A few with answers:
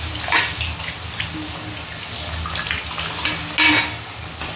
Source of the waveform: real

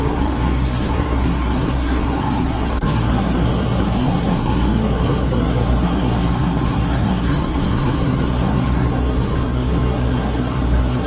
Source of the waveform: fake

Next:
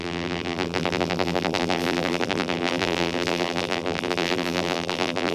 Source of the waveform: fake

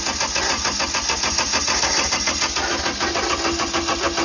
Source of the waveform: real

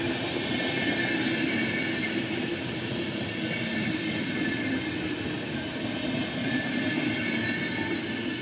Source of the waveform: real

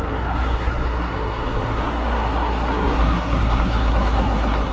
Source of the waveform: fake